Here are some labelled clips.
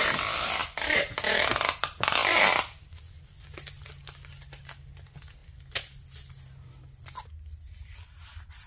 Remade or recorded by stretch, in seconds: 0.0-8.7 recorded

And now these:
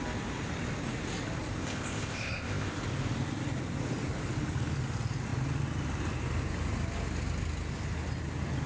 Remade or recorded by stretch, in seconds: 0.0-1.6 recorded; 1.6-2.7 remade; 2.7-8.7 recorded